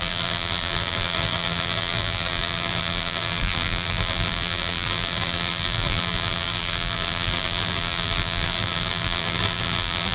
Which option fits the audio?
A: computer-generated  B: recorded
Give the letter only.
A